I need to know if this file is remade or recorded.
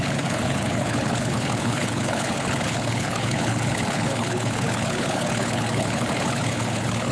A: remade